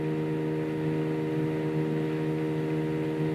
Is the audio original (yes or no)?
yes